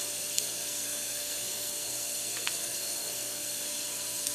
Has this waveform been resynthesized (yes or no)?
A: yes